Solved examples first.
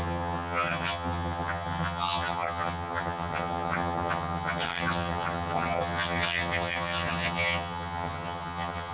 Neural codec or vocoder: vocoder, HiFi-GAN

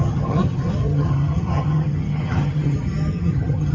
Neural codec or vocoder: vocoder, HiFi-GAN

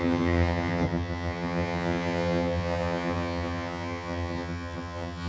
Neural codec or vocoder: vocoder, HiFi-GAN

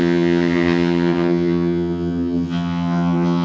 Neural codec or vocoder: vocoder, HiFi-GAN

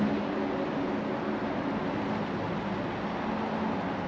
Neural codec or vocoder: none